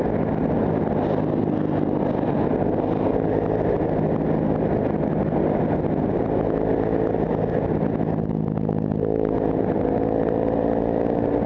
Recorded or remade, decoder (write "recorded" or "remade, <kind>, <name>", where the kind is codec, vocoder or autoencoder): recorded